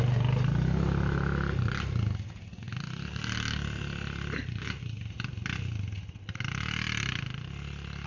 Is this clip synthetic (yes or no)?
no